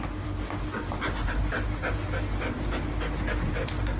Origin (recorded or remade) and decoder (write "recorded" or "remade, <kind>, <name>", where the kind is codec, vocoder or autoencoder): recorded